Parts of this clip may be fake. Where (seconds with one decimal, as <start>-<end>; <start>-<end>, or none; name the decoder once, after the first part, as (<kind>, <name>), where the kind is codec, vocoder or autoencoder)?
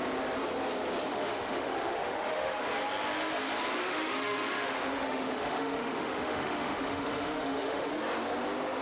1.1-2.6 (autoencoder, DAC-VAE); 3.8-7.9